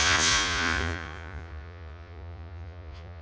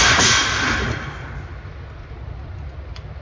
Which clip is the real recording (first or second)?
second